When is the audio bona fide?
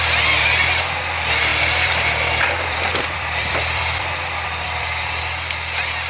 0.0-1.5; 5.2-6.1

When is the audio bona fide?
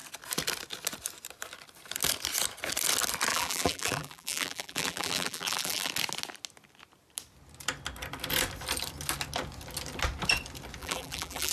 0.0-3.3; 5.9-10.8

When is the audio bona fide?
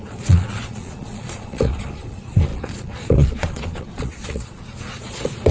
none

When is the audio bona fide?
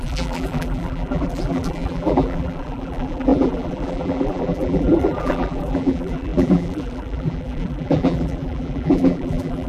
none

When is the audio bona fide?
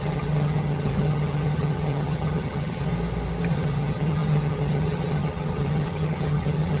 2.9-3.5